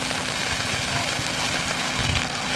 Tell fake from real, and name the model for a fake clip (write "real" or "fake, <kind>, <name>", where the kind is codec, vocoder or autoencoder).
real